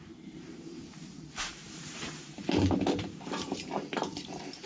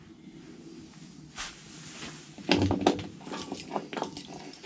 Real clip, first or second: second